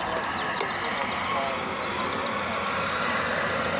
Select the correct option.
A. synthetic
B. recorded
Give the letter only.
B